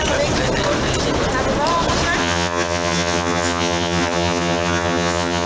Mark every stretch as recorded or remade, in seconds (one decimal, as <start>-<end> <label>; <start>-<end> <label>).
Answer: 0.0-2.2 recorded; 2.2-5.5 remade